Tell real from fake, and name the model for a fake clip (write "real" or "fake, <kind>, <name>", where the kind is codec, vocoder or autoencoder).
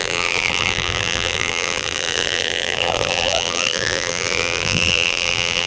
fake, vocoder, BigVGAN v2